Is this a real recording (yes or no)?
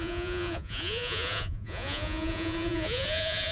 no